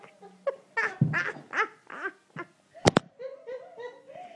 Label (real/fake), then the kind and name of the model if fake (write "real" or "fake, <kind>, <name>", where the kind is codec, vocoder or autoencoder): real